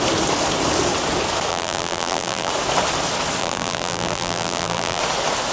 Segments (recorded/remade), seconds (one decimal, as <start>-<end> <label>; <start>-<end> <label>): 0.0-1.5 recorded; 1.5-2.5 remade; 2.5-3.4 recorded; 3.4-5.0 remade; 5.0-5.5 recorded